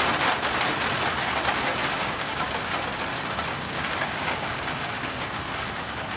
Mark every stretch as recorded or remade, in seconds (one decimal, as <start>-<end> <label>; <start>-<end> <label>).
0.0-2.0 recorded; 2.0-2.7 remade; 2.7-3.5 recorded; 3.5-5.5 remade; 5.5-6.2 recorded